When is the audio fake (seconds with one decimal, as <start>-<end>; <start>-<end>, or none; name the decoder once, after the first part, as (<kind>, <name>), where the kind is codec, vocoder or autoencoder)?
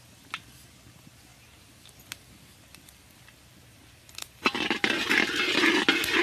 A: none